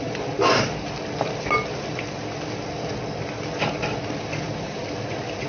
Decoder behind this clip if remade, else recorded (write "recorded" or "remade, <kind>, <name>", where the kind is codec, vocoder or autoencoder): recorded